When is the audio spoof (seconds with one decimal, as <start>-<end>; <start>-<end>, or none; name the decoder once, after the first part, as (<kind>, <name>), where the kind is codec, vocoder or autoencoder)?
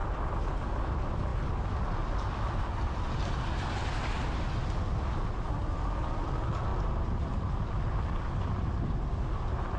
none